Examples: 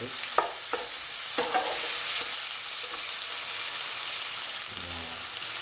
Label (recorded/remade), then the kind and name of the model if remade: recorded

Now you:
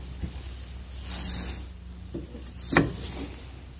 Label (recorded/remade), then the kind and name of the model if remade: remade, vocoder, BigVGAN v2